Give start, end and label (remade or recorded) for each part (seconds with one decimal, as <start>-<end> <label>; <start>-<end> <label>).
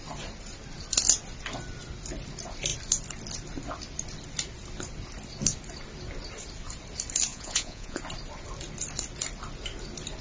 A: 0.0-7.3 recorded; 7.3-8.0 remade; 8.0-10.2 recorded